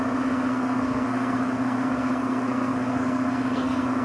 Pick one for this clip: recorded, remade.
remade